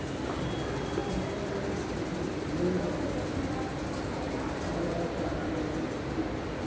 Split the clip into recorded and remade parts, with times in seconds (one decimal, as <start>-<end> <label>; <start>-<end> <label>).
0.0-6.7 recorded